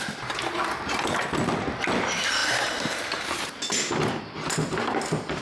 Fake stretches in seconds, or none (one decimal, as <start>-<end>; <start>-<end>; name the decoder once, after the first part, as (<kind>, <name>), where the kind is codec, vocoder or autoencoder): none